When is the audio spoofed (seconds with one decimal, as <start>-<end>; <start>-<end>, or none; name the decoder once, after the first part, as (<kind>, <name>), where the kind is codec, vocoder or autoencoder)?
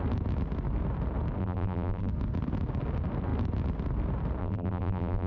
1.4-2.1 (vocoder, BigVGAN v2); 4.4-5.3